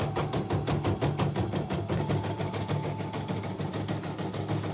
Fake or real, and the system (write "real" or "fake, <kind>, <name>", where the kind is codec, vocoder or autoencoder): real